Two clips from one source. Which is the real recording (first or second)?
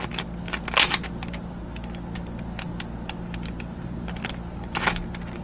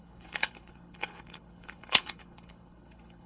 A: first